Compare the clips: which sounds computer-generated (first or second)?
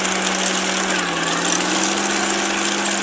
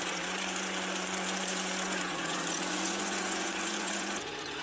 second